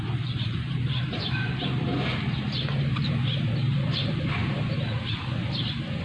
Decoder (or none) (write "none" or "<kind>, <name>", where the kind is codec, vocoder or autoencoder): vocoder, BigVGAN v2